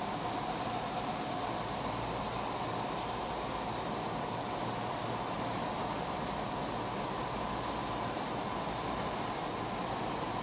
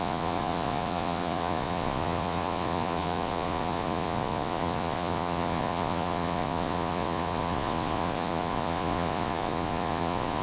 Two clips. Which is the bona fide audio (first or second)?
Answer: first